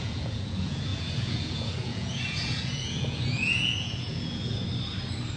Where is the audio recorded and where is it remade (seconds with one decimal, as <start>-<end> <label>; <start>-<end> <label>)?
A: 0.0-4.6 remade; 4.6-5.4 recorded